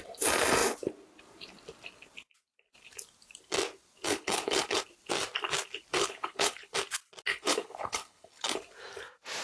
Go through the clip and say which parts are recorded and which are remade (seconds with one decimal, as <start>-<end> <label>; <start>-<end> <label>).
0.0-4.1 recorded; 4.1-4.8 remade; 4.8-6.0 recorded; 6.0-6.7 remade; 6.7-7.3 recorded; 7.3-8.6 remade; 8.6-9.4 recorded